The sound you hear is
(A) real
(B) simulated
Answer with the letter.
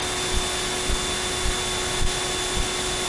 A